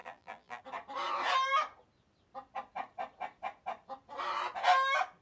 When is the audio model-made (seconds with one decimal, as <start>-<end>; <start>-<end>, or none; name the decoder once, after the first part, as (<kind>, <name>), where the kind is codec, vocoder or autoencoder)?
0.0-0.6 (vocoder, BigVGAN v2)